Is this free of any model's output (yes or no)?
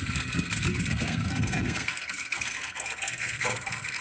no